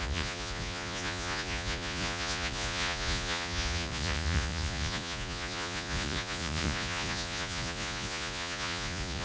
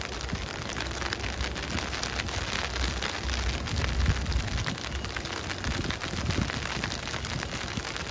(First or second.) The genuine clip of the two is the second